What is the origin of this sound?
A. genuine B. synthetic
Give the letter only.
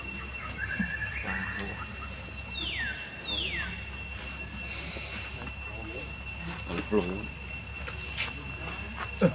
A